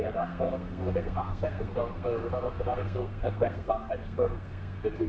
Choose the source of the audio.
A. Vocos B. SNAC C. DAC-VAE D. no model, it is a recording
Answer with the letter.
B